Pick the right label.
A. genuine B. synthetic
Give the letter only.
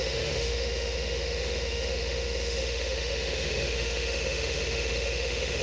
B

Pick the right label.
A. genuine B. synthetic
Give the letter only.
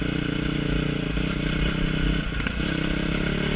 A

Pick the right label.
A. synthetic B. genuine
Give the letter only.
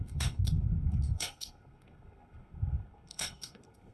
A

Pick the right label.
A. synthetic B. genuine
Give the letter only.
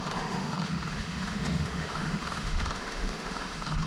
A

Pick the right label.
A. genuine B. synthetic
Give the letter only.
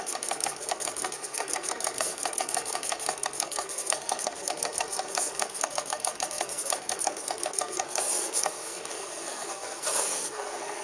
B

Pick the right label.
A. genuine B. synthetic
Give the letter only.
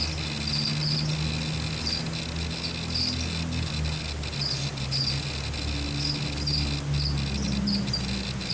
A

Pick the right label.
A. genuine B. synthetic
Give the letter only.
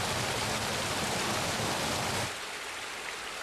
A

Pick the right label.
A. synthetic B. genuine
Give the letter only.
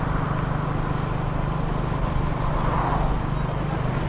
B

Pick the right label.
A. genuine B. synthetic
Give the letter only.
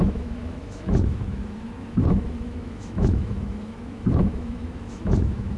B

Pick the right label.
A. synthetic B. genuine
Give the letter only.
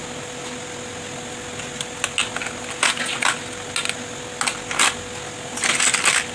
B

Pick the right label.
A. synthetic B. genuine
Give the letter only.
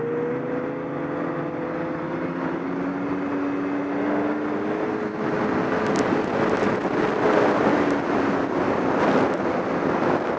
B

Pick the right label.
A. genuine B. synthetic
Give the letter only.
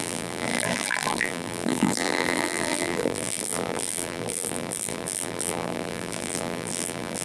B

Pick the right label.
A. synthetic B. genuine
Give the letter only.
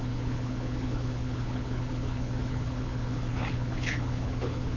A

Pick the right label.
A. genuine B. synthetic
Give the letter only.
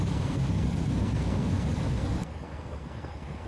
B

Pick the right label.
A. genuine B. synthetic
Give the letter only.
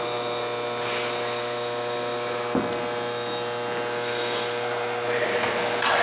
A